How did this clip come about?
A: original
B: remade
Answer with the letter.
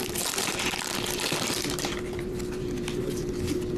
B